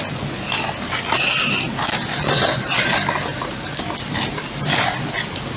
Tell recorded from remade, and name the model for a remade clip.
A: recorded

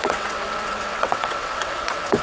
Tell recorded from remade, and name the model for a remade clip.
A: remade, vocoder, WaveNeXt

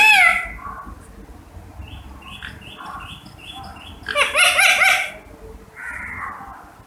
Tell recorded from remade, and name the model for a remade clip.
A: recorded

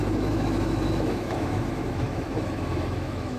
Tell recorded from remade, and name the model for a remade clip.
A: remade, autoencoder, DAC-VAE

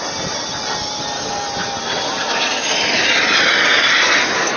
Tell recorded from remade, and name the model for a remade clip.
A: recorded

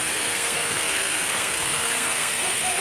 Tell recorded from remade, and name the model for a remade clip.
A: remade, codec, SNAC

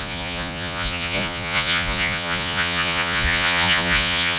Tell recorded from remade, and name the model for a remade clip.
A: remade, vocoder, Vocos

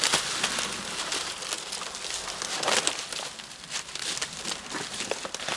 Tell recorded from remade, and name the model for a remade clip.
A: recorded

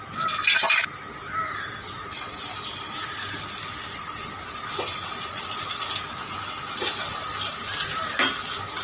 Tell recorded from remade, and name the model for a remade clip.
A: recorded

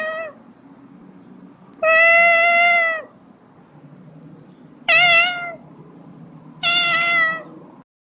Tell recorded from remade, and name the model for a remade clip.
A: recorded